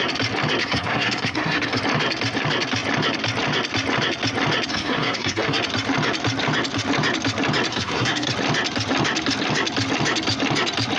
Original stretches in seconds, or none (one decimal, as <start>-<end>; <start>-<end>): 0.0-0.6; 1.8-4.7; 5.6-7.7; 8.3-11.0